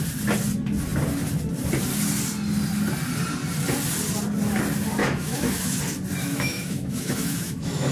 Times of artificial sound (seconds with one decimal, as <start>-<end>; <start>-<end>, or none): 5.0-5.8; 6.2-7.9